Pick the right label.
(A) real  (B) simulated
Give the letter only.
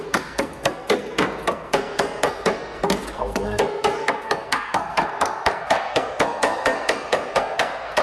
B